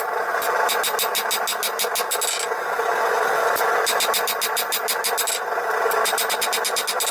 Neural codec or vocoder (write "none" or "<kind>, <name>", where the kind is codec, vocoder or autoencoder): none